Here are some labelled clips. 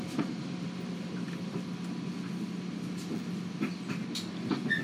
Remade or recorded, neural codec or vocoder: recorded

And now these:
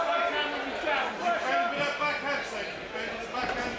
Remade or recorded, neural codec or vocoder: recorded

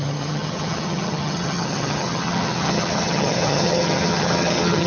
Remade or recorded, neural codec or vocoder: remade, vocoder, HiFi-GAN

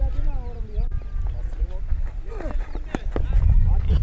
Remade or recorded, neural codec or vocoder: recorded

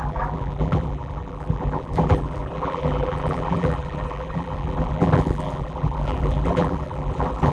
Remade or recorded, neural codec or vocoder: remade, vocoder, BigVGAN v2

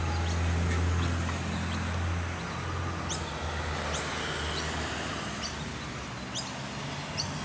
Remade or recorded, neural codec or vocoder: recorded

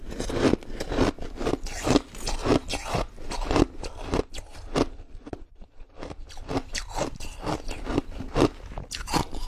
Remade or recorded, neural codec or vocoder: recorded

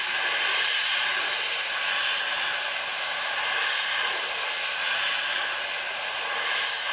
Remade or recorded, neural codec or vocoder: recorded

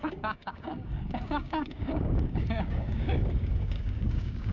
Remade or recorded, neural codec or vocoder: remade, codec, DAC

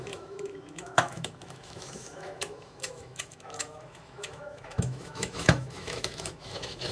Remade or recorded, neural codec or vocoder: remade, autoencoder, DAC-VAE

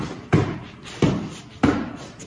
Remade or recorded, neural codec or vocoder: remade, vocoder, BigVGAN v2